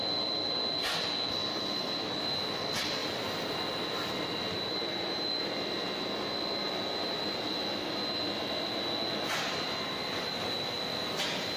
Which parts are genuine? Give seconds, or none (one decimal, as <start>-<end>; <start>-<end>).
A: 0.0-11.6